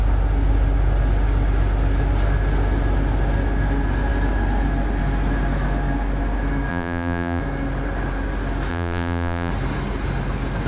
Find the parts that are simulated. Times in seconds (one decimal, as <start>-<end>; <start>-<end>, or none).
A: 6.7-7.4; 8.7-9.5

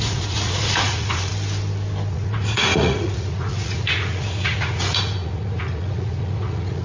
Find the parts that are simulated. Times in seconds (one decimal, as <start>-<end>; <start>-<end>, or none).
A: 0.0-1.3; 2.1-6.8